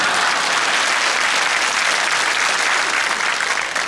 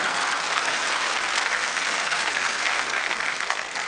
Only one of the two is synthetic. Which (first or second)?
second